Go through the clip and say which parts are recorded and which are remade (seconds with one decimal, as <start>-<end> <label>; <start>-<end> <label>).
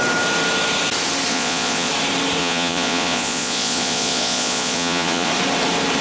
0.0-1.3 recorded; 1.3-1.9 remade; 1.9-2.4 recorded; 2.4-5.3 remade; 5.3-6.0 recorded